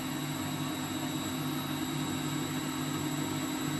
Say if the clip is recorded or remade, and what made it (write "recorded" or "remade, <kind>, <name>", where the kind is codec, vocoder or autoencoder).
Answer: recorded